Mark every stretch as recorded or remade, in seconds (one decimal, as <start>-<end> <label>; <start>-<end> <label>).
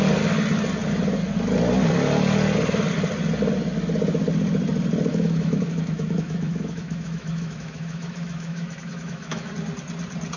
0.0-5.1 recorded; 5.1-9.5 remade; 9.5-10.4 recorded